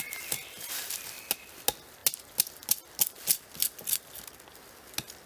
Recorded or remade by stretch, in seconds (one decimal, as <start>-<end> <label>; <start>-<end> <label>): 0.0-5.3 recorded